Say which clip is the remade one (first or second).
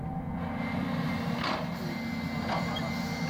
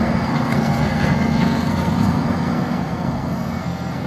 second